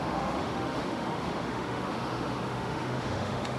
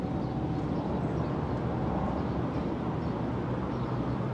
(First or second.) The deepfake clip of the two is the first